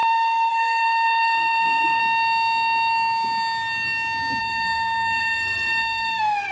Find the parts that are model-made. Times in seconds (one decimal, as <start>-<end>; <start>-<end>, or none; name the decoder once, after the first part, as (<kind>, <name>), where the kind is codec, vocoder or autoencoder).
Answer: 0.0-2.0 (codec, SNAC); 4.4-6.5